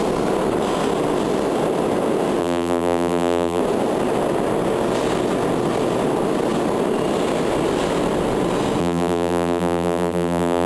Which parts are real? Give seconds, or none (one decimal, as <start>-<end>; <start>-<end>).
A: 0.0-2.4; 3.6-8.8